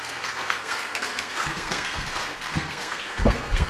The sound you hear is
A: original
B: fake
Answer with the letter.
B